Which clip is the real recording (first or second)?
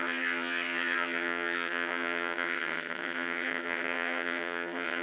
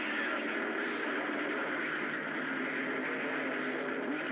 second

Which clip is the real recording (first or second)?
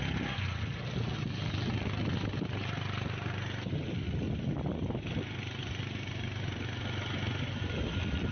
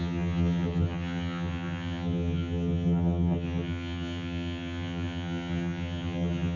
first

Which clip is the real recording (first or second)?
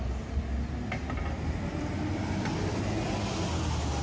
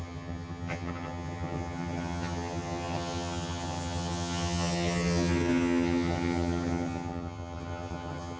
first